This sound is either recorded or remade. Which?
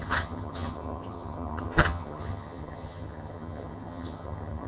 remade